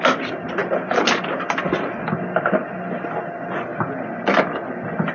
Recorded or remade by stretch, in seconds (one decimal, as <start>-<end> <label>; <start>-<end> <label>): 0.0-5.1 recorded